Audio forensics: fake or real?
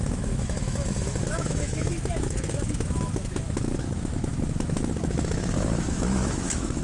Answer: fake